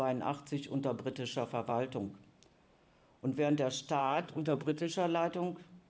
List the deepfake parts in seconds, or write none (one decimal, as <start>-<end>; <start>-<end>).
4.0-4.9